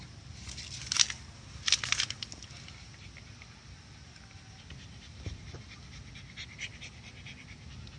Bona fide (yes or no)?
yes